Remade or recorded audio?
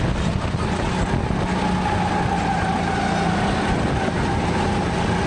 recorded